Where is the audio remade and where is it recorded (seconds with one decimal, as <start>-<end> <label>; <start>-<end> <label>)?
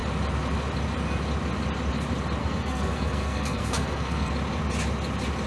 0.0-2.4 recorded; 2.4-4.3 remade; 4.3-5.5 recorded